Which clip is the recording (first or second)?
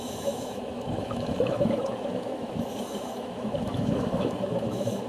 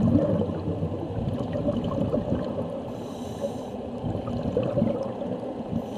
second